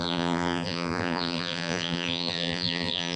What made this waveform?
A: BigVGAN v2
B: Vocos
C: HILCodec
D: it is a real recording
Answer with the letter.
A